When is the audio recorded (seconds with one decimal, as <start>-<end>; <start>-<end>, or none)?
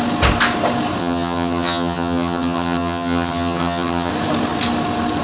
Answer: 0.0-1.0; 4.1-5.2